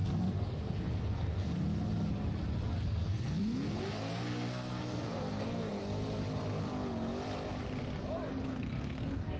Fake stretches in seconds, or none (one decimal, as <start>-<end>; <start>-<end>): 0.0-1.9; 2.8-5.8; 8.3-9.4